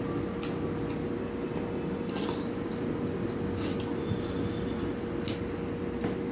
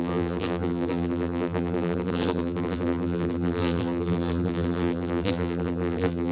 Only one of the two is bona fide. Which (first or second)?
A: first